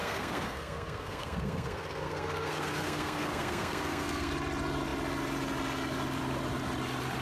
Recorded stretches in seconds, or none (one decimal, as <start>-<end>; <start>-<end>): 4.3-7.2